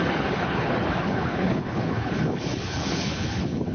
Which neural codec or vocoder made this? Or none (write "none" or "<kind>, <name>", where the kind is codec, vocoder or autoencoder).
codec, HILCodec